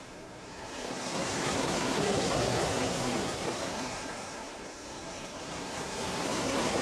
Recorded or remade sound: remade